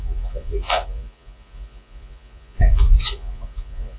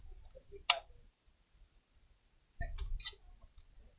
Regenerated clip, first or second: first